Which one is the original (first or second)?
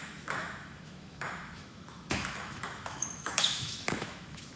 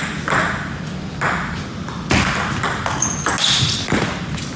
second